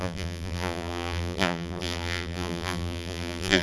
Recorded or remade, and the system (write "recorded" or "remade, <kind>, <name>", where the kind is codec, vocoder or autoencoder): remade, vocoder, BigVGAN v2